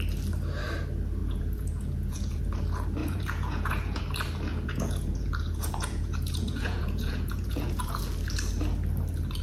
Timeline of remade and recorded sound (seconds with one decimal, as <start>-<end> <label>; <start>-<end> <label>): 0.0-1.2 recorded; 1.2-2.4 remade; 2.4-3.0 recorded; 3.0-4.0 remade; 4.0-4.5 recorded; 4.5-8.0 remade; 8.0-9.4 recorded